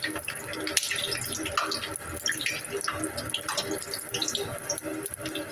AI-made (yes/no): no